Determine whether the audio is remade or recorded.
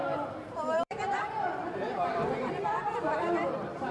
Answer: remade